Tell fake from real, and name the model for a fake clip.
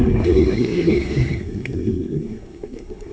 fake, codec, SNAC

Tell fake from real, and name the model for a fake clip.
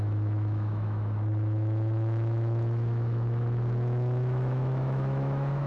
fake, autoencoder, DAC-VAE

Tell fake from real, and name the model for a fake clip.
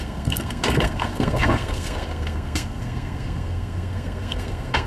fake, codec, SNAC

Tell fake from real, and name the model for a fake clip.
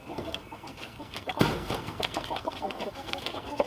fake, codec, SNAC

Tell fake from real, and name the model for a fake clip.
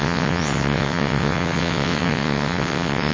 fake, vocoder, WaveNeXt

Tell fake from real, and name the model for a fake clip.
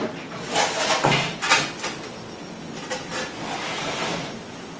real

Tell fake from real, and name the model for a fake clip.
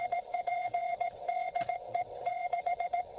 fake, vocoder, WaveNeXt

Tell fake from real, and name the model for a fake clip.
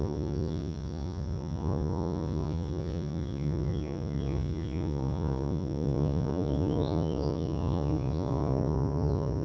fake, vocoder, Vocos